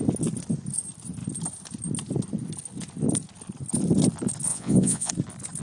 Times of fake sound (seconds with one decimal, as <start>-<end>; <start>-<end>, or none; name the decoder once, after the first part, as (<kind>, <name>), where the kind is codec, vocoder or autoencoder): 4.5-5.1 (vocoder, Vocos)